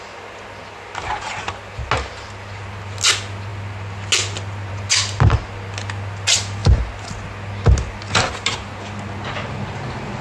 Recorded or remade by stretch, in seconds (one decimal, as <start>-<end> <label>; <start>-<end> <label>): 0.0-10.2 recorded